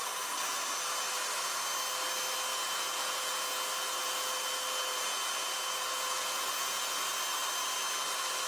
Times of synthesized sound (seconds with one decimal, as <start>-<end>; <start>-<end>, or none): 2.5-7.0